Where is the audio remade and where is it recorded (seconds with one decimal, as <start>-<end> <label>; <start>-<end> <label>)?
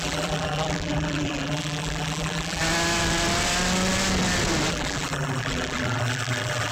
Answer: 0.0-2.6 remade; 2.6-4.7 recorded; 4.7-6.7 remade